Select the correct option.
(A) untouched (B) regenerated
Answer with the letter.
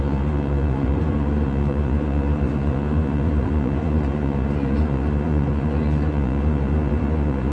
B